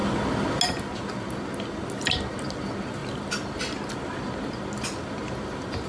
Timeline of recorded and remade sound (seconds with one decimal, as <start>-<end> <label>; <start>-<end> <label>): 0.0-5.9 recorded